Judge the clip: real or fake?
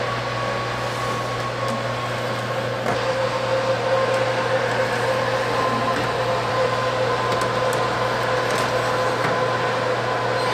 real